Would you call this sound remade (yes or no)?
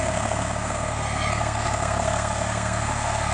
yes